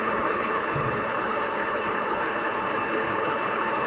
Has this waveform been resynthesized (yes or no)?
yes